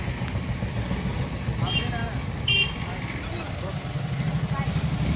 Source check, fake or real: real